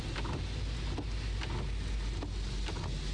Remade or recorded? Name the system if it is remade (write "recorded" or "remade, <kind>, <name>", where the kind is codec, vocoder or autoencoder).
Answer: recorded